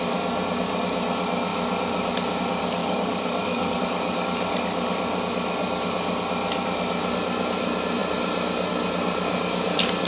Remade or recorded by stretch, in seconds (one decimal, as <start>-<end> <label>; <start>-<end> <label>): 0.0-2.8 recorded; 2.8-3.8 remade; 3.8-10.1 recorded